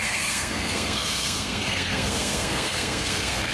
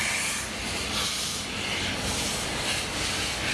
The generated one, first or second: first